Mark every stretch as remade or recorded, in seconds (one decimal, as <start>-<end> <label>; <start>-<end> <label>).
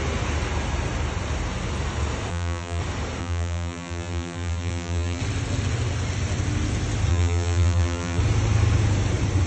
0.0-2.3 recorded; 2.3-2.8 remade; 2.8-3.2 recorded; 3.2-5.2 remade; 5.2-7.1 recorded; 7.1-8.2 remade; 8.2-9.5 recorded